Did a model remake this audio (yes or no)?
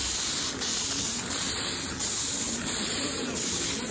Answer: no